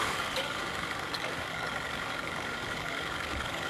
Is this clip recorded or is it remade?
remade